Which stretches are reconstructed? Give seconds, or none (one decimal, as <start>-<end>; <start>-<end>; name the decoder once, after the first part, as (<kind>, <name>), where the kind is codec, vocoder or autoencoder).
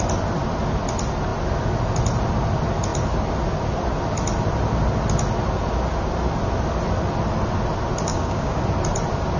8.1-8.6 (codec, DAC)